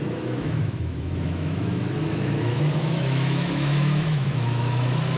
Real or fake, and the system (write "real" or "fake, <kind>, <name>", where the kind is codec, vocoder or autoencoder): fake, autoencoder, DAC-VAE